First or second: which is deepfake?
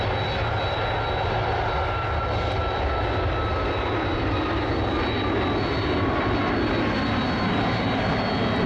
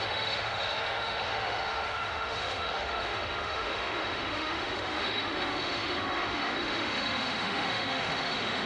second